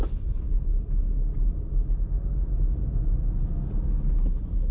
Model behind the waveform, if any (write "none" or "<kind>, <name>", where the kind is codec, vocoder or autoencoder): none